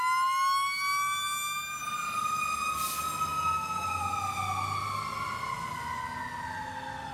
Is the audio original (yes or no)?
yes